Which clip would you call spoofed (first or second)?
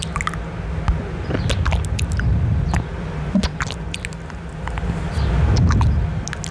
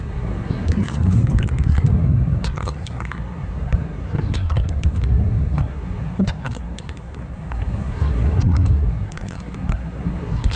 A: second